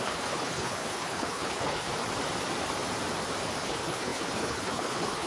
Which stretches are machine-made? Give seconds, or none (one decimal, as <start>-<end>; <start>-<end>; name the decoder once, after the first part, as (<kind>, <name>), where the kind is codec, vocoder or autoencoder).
0.0-1.9 (codec, HILCodec); 3.6-5.3